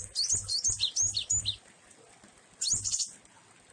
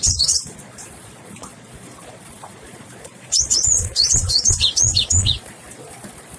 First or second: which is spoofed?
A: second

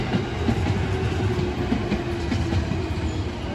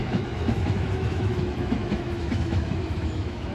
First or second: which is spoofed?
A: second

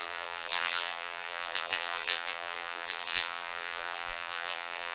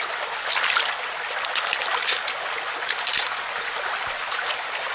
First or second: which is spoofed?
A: first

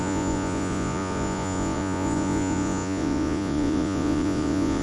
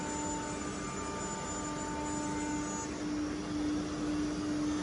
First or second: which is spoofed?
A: first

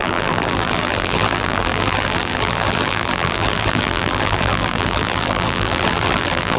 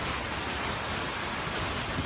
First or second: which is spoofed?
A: first